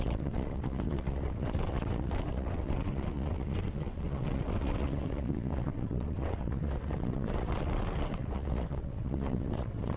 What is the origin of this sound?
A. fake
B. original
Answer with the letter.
A